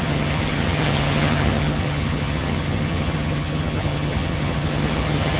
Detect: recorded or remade remade